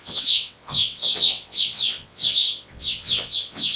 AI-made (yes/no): yes